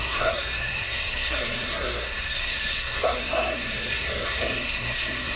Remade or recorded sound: remade